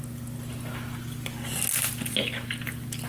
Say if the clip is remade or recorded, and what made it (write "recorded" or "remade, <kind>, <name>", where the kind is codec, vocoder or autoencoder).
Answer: recorded